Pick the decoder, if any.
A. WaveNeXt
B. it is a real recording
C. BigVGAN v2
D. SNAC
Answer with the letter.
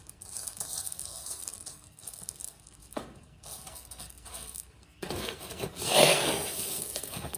D